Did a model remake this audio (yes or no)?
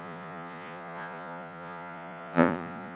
yes